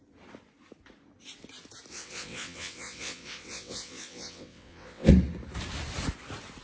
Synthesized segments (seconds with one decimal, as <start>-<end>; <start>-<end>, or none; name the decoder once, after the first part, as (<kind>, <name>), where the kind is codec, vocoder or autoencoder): 1.9-5.1 (vocoder, WaveNeXt)